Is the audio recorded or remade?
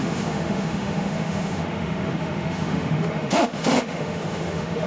remade